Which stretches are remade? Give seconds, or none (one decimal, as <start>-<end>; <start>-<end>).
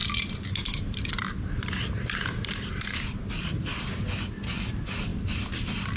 0.0-3.6